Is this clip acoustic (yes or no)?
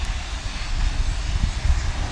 yes